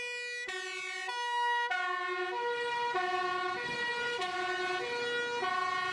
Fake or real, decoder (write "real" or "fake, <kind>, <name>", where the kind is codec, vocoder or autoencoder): real